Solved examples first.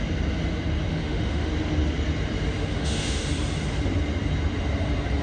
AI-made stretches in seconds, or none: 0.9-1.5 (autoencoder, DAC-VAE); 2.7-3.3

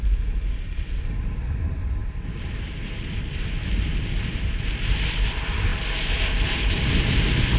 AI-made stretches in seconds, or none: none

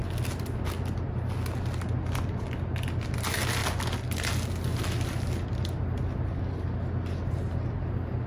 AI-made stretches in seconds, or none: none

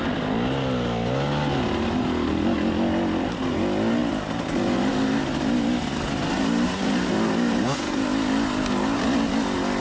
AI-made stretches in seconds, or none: none

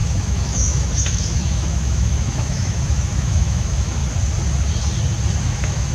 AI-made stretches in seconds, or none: 0.0-4.0 (autoencoder, DAC-VAE); 5.4-5.9

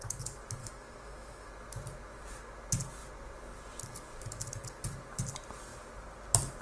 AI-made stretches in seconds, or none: 0.6-1.5 (autoencoder, DAC-VAE)

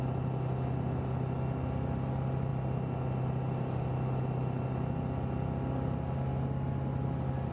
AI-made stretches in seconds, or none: none

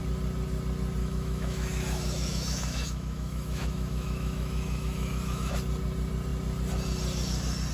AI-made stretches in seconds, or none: 1.0-5.5 (autoencoder, DAC-VAE)